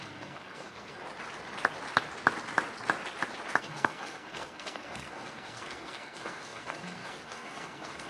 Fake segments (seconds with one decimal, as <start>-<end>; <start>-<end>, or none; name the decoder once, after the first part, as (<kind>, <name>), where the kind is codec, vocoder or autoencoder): 0.0-1.0 (codec, SNAC); 3.6-8.1